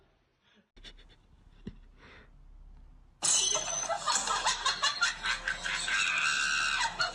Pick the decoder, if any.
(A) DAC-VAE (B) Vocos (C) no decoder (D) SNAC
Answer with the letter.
C